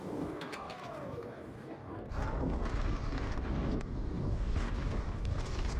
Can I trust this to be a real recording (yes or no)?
no